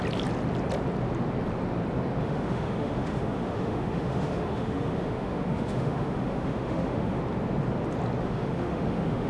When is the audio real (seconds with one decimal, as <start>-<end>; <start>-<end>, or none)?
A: 0.0-2.2; 7.2-8.2